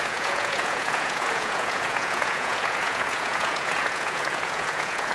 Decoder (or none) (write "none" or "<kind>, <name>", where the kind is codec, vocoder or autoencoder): vocoder, Vocos